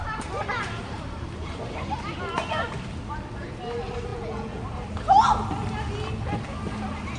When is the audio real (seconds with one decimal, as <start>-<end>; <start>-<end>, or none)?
0.0-4.1; 4.6-7.2